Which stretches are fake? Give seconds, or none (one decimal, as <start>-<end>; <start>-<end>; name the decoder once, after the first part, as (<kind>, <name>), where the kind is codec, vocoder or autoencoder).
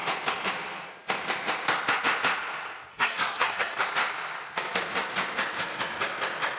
2.9-3.8 (codec, SNAC)